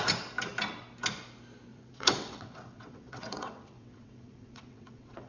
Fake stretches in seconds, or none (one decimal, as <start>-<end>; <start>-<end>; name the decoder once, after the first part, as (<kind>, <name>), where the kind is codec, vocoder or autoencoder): 1.7-5.3 (vocoder, WaveNeXt)